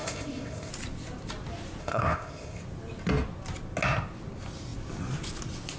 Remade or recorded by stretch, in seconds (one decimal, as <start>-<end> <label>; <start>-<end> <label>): 0.0-0.7 remade; 0.7-1.8 recorded; 1.8-2.6 remade; 2.6-5.8 recorded